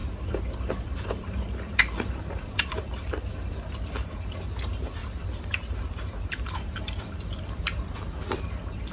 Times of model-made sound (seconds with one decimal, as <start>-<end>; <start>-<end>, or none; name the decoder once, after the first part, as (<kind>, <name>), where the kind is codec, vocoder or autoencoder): 0.0-4.5 (vocoder, BigVGAN v2); 5.0-7.6